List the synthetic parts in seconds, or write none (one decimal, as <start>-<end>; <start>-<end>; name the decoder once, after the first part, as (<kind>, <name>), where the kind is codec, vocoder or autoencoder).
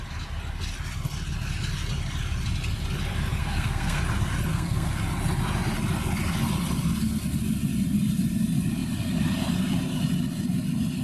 3.4-4.0 (codec, SNAC); 4.5-5.0